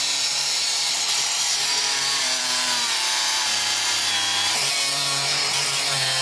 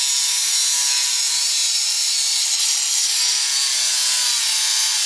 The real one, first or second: second